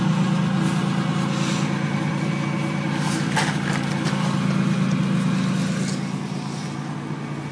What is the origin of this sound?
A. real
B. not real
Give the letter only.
A